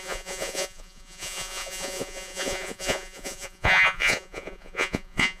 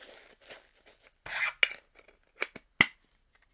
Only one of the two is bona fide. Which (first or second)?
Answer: second